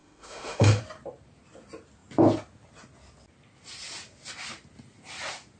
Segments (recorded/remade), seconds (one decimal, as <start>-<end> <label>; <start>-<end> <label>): 0.0-0.8 remade; 0.8-5.6 recorded